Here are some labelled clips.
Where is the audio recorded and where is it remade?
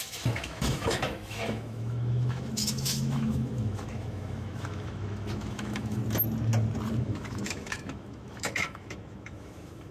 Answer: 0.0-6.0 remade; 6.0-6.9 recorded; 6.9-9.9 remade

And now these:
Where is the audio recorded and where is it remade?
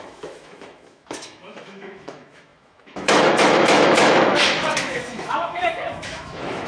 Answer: 0.0-6.7 remade